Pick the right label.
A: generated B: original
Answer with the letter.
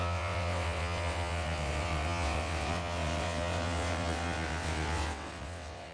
A